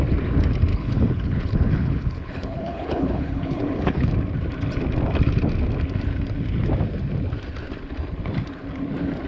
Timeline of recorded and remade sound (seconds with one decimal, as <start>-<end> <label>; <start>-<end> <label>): 0.0-0.7 recorded; 0.7-4.1 remade; 4.1-9.3 recorded